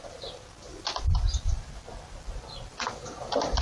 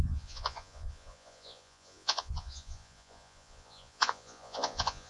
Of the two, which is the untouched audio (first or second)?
first